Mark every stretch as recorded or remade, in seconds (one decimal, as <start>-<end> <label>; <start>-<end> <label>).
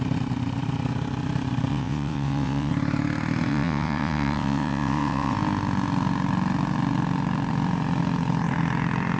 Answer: 0.0-1.7 recorded; 1.7-2.7 remade; 2.7-3.5 recorded; 3.5-5.3 remade; 5.3-9.2 recorded